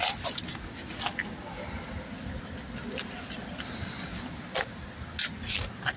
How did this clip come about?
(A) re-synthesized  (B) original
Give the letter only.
B